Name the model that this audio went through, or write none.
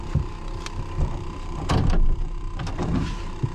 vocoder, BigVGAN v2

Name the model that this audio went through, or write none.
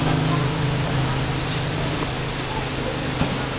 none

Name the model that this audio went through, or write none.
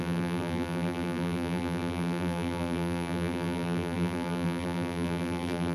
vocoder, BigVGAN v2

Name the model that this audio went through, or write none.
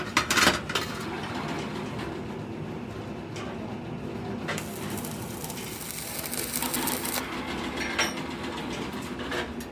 none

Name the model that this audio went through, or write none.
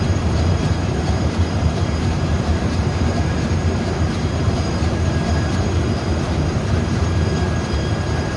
vocoder, BigVGAN v2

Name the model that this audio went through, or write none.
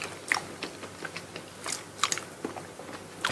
none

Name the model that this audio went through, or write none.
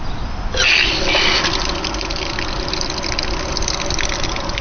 none